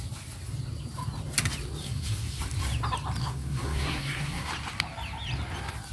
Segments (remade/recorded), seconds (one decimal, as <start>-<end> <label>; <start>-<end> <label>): 0.0-1.8 recorded; 1.8-2.4 remade; 2.4-3.2 recorded; 3.2-4.5 remade; 4.5-5.9 recorded